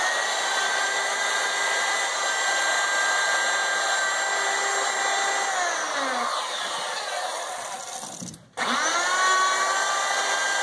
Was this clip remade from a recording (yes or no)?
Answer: no